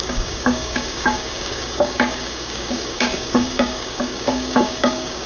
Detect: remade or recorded remade